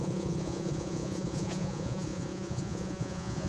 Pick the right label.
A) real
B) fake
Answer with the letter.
B